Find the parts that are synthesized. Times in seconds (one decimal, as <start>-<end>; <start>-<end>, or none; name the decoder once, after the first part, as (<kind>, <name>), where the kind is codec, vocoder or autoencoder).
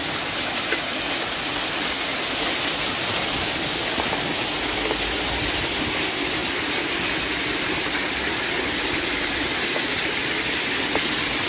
none